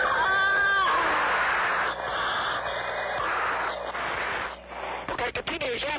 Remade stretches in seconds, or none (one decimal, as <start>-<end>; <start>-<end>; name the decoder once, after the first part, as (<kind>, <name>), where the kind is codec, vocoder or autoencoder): none